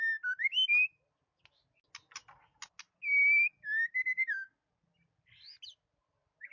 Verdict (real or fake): real